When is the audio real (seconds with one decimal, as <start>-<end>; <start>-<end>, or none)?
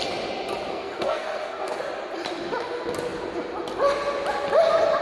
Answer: 0.0-0.7; 1.8-5.0